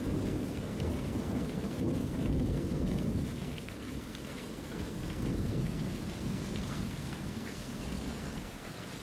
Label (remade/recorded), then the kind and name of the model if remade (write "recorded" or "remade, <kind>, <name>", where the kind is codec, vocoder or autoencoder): remade, codec, SNAC